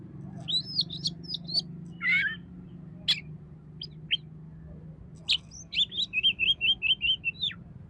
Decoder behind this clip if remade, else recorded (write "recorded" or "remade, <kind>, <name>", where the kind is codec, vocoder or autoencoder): recorded